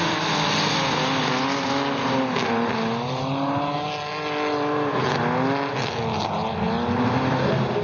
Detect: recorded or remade recorded